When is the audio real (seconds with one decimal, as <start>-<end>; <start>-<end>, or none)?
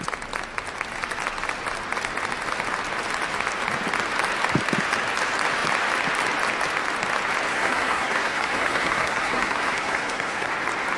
0.0-7.5; 10.5-11.0